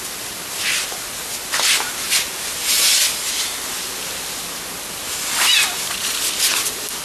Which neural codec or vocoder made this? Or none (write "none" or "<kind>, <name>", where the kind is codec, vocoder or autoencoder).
none